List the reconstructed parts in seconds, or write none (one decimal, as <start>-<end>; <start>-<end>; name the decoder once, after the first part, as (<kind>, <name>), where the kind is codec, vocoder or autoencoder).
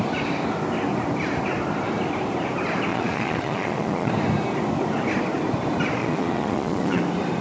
2.9-4.1 (vocoder, Vocos); 6.0-7.0